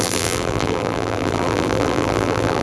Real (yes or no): no